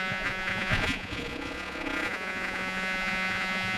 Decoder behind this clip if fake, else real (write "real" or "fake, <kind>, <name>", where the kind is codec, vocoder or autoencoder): fake, vocoder, Vocos